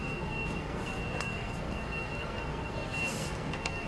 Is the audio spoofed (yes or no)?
yes